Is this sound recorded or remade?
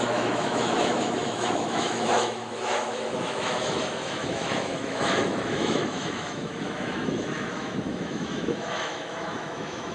remade